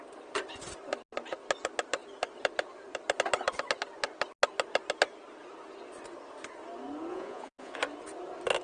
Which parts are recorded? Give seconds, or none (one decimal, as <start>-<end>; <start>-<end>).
0.0-7.1; 7.8-8.6